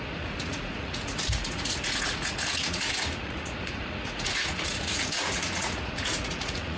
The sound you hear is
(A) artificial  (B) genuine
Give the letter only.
A